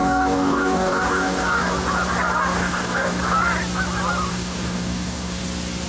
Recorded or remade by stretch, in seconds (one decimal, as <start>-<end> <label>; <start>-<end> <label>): 0.0-1.7 remade; 1.7-2.5 recorded; 2.5-3.2 remade; 3.2-4.3 recorded; 4.3-5.4 remade; 5.4-5.9 recorded

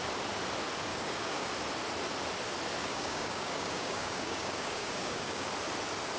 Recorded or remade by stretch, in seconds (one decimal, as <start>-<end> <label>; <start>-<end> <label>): 0.0-0.9 recorded; 0.9-1.5 remade; 1.5-2.8 recorded; 2.8-5.5 remade; 5.5-6.2 recorded

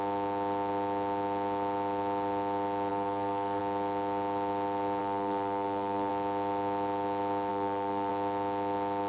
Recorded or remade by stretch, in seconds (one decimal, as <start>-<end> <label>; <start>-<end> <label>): 0.0-2.9 recorded; 2.9-3.6 remade; 3.6-5.0 recorded; 5.0-6.1 remade; 6.1-7.5 recorded; 7.5-8.1 remade; 8.1-9.1 recorded

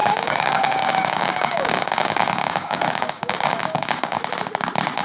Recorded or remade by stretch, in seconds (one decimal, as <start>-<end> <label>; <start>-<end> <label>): 0.0-4.2 remade; 4.2-5.0 recorded

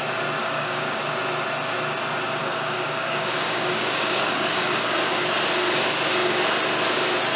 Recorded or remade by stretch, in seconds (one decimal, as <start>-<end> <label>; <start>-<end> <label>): 0.0-0.4 recorded; 0.4-1.0 remade; 1.0-2.4 recorded; 2.4-5.2 remade; 5.2-7.4 recorded

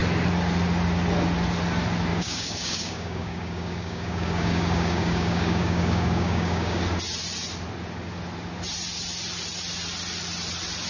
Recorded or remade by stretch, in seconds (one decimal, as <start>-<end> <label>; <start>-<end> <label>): 0.0-2.1 recorded; 2.1-6.8 remade; 6.8-10.9 recorded